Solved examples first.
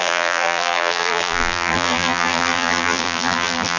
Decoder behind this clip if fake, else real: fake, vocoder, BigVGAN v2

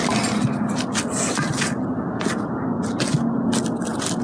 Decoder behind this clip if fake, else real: real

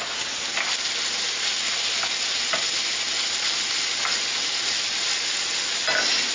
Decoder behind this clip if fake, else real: real